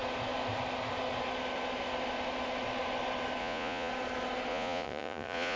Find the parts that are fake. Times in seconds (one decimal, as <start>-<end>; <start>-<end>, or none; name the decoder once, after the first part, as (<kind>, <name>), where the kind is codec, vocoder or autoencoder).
3.4-3.9 (vocoder, Vocos); 4.5-5.6